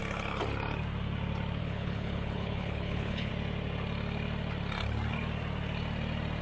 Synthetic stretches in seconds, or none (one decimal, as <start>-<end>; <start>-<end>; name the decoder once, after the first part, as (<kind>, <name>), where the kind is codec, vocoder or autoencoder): 1.6-3.3 (codec, HILCodec)